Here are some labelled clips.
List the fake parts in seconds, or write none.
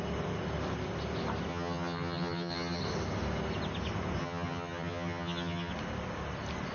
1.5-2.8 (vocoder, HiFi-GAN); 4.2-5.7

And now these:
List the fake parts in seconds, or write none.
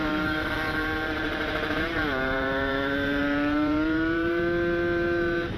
0.0-5.6 (vocoder, BigVGAN v2)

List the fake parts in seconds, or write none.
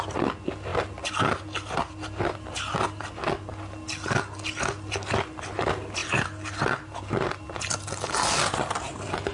none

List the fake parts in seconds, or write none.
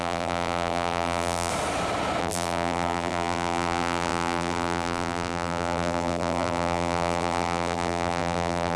0.0-1.5 (vocoder, BigVGAN v2); 2.2-8.8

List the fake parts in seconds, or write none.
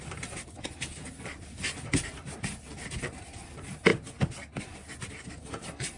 0.0-3.9 (vocoder, BigVGAN v2); 5.3-6.0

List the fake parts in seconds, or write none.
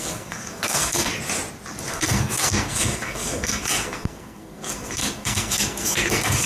0.0-1.1 (codec, SNAC); 1.9-6.5